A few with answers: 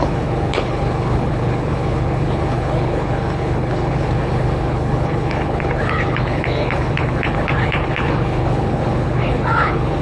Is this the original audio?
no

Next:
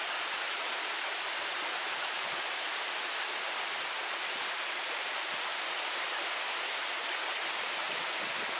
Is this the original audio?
no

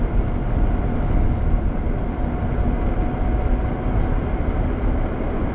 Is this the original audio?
yes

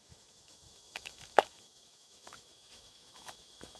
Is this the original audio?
no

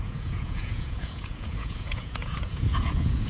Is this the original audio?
no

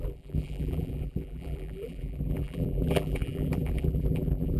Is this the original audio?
no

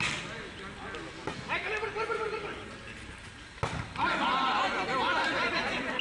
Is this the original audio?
yes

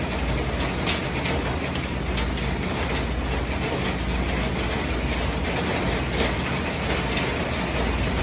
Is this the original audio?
yes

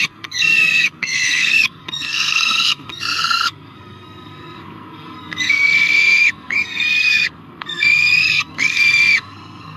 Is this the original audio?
no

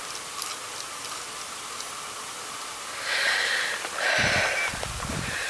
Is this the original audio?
yes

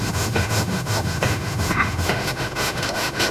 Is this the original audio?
no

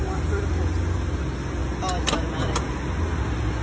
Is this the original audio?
yes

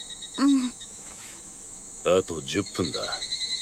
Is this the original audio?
no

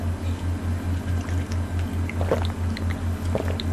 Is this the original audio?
yes